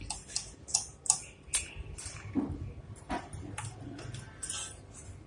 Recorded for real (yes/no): yes